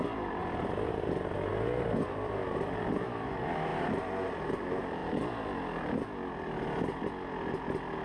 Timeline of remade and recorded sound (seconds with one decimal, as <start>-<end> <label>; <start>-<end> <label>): 0.0-8.0 recorded